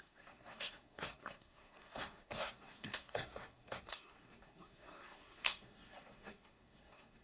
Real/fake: fake